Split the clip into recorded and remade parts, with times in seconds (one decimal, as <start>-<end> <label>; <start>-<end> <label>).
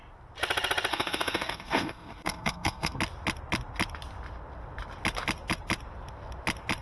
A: 0.0-0.9 recorded; 0.9-3.0 remade; 3.0-6.8 recorded